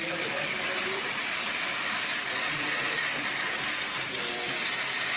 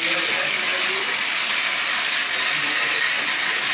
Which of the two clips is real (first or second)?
second